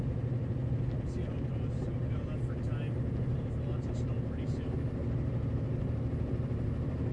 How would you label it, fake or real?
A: real